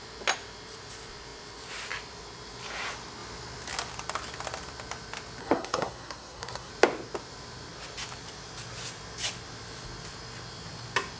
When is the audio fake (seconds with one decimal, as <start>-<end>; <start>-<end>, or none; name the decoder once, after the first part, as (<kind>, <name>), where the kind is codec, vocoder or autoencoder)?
5.4-6.7 (codec, SNAC)